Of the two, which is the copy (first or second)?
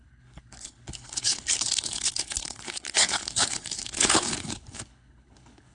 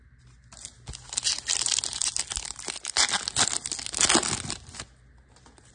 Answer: first